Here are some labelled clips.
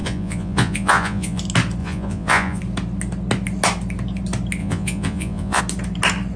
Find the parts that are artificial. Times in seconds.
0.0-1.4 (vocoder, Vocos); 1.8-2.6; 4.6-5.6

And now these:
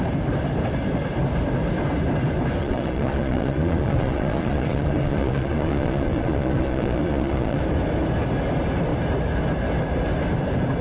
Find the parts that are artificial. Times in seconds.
2.6-7.6 (vocoder, Vocos)

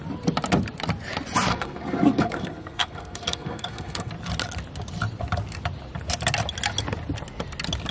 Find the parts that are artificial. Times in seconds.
1.5-4.1 (codec, SNAC)

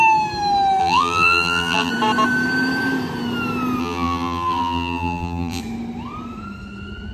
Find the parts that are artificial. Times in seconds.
0.8-1.9 (vocoder, BigVGAN v2); 3.8-5.6

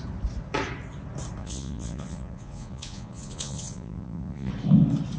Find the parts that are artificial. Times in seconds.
1.4-4.5 (vocoder, Vocos)

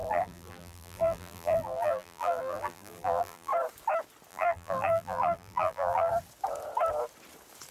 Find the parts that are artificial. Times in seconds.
0.0-3.5 (vocoder, BigVGAN v2); 4.3-6.1

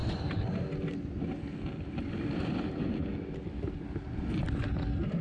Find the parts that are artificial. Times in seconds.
none